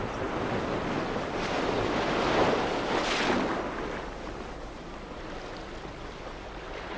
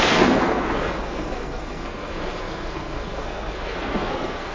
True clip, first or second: first